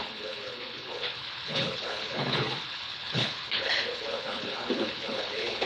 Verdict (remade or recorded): remade